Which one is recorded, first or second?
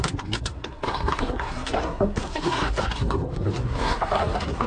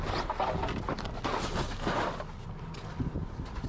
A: second